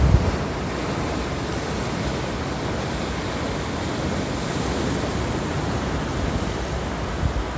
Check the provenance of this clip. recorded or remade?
recorded